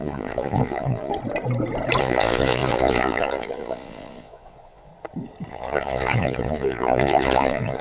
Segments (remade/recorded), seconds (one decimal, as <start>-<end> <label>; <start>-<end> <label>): 0.0-1.1 remade; 1.1-2.0 recorded; 2.0-4.9 remade; 4.9-5.5 recorded; 5.5-7.8 remade